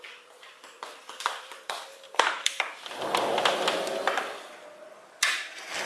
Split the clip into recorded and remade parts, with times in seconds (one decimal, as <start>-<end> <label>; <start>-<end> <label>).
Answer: 0.0-1.0 recorded; 1.0-2.9 remade; 2.9-5.9 recorded